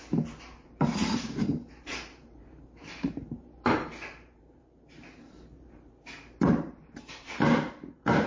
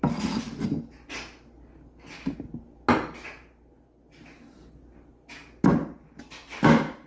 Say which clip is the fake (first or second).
first